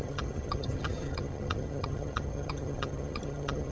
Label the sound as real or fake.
fake